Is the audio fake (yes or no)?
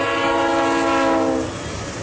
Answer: no